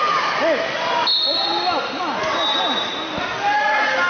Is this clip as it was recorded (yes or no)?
yes